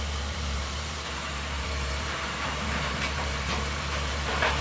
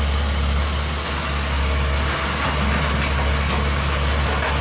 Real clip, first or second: second